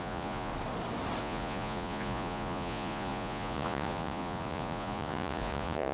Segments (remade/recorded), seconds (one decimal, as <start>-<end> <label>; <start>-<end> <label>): 0.0-0.5 remade; 0.5-1.2 recorded; 1.2-5.9 remade